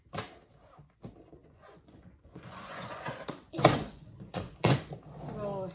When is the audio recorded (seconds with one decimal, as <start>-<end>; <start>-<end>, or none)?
0.0-1.4; 4.8-5.7